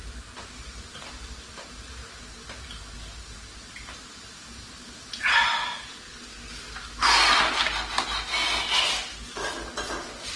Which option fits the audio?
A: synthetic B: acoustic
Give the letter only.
B